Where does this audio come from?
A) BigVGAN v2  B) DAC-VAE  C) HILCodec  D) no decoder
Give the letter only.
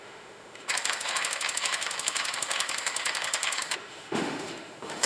B